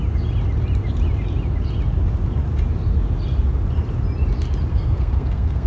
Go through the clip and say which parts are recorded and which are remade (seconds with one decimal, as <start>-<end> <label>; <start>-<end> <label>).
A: 0.0-4.7 recorded; 4.7-5.7 remade